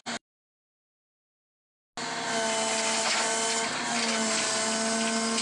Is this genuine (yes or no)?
yes